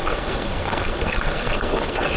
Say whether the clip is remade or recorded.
remade